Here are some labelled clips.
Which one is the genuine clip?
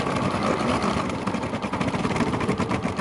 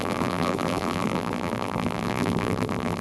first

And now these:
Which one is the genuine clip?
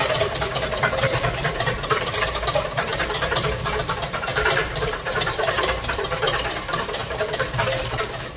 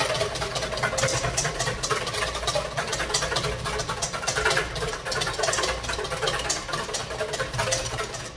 second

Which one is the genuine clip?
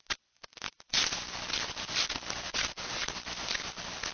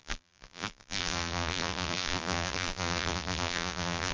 first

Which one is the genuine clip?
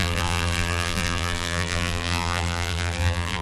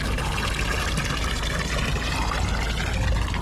second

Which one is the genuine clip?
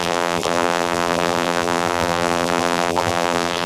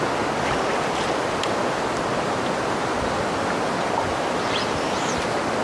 second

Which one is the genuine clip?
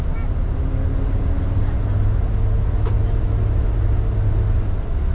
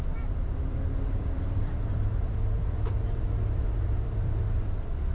first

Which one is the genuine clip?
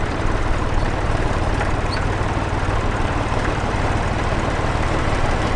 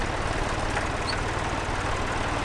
second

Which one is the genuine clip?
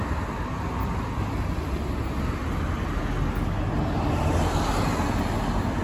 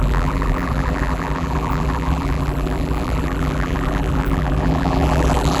first